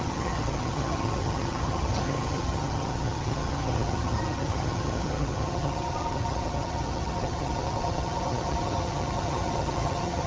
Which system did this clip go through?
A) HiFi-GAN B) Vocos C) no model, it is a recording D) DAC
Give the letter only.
A